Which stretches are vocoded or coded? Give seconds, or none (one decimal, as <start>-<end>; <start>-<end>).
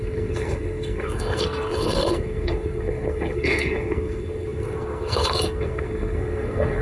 0.0-6.8